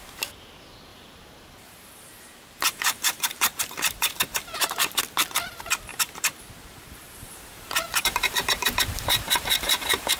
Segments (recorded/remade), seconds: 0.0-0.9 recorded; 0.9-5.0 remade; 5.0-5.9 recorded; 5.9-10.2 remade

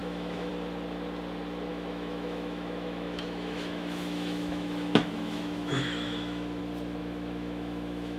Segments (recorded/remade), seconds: 0.0-0.5 remade; 0.5-1.7 recorded; 1.7-6.6 remade; 6.6-7.0 recorded; 7.0-8.2 remade